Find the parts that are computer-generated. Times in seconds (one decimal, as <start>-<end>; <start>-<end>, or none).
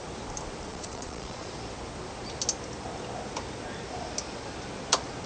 0.7-1.5